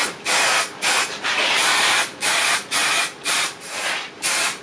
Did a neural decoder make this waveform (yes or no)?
yes